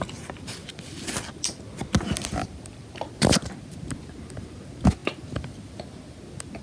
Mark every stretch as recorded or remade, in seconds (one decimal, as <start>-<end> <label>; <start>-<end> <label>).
0.0-0.6 recorded; 0.6-4.0 remade; 4.0-6.6 recorded